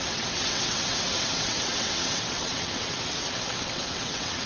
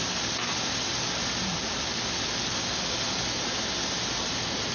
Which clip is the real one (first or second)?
second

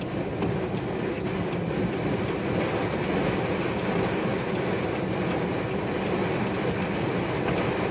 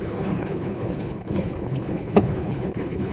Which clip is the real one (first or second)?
first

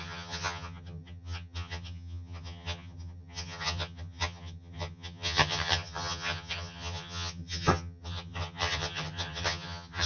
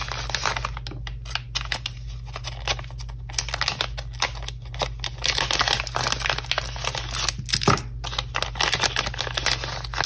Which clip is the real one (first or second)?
second